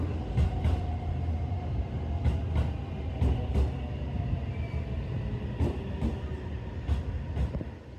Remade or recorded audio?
recorded